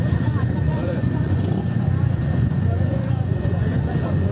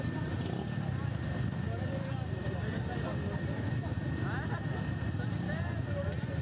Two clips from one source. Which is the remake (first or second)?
first